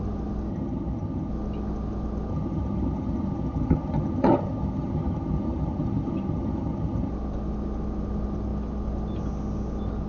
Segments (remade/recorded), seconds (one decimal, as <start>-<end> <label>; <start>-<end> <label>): 0.0-0.5 recorded; 0.5-1.3 remade; 1.3-2.3 recorded; 2.3-7.1 remade; 7.1-10.1 recorded